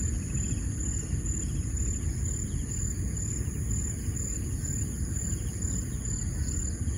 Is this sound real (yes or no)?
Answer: yes